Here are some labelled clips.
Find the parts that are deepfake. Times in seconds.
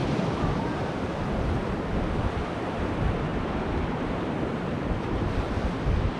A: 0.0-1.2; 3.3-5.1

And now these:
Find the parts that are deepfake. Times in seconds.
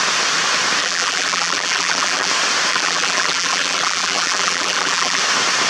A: 0.8-2.3; 2.7-5.2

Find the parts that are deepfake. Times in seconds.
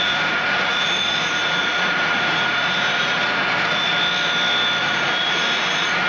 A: 0.0-3.9; 4.8-6.1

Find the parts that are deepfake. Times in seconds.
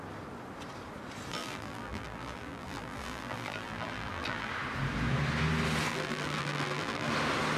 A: 1.3-4.5; 5.9-7.1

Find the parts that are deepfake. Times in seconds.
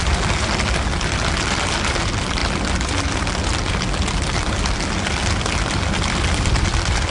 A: none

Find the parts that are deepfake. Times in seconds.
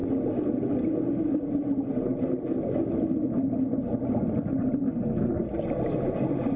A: none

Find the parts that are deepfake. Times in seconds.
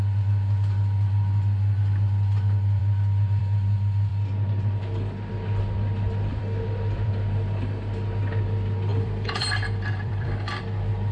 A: 6.3-7.1; 8.9-10.6